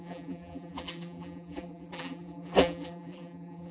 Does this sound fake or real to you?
fake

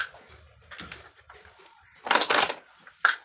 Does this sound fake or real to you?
real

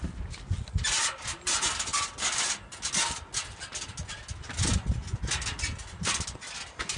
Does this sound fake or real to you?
real